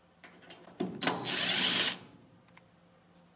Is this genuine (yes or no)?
yes